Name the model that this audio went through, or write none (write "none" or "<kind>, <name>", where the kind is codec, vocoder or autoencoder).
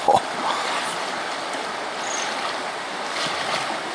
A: none